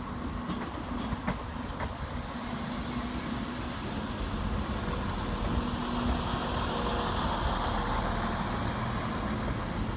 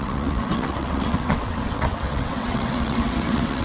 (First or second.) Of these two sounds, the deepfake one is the second